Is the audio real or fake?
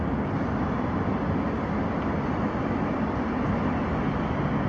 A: real